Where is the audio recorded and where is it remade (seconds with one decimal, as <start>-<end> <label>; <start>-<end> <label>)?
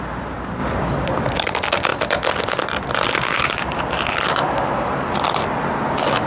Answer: 0.0-0.6 recorded; 0.6-1.4 remade; 1.4-1.9 recorded; 1.9-5.4 remade; 5.4-6.3 recorded